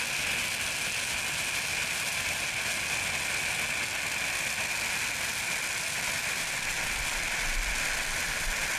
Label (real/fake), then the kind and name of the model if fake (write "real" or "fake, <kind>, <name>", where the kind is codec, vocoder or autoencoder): real